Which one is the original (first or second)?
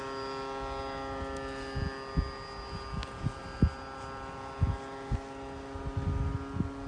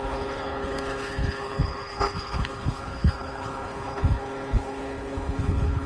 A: first